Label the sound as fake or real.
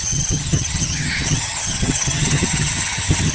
fake